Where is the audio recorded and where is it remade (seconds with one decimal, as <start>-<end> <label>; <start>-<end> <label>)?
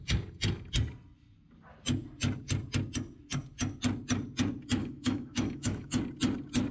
0.0-4.8 recorded; 4.8-6.0 remade; 6.0-6.7 recorded